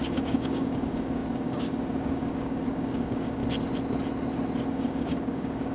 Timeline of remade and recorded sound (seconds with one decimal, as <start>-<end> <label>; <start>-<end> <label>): 0.0-3.4 remade; 3.4-4.7 recorded; 4.7-5.7 remade